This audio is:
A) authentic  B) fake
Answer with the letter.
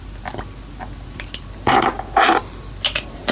A